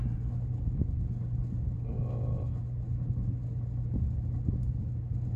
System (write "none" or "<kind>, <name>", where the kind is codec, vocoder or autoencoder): none